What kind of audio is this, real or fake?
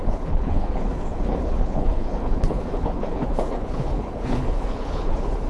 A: fake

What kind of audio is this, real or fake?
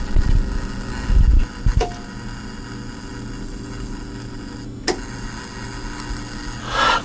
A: real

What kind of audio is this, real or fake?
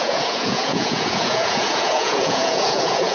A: fake